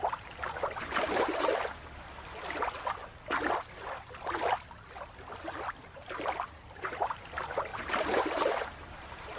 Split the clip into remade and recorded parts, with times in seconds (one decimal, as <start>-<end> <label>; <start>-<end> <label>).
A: 0.0-1.5 remade; 1.5-5.8 recorded; 5.8-9.4 remade